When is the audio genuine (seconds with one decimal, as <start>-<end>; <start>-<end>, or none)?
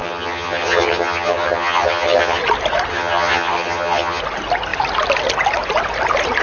2.4-2.9; 4.2-6.4